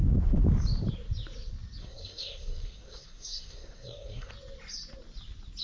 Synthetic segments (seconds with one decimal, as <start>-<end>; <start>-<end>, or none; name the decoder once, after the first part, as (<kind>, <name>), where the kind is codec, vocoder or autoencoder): 1.8-4.3 (codec, SNAC)